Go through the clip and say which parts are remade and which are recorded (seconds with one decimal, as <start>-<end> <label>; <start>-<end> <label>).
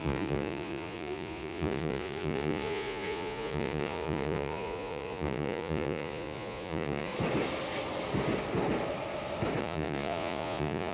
0.0-7.1 remade; 7.1-9.6 recorded; 9.6-10.9 remade